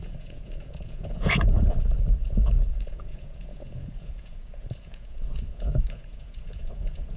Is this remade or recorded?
remade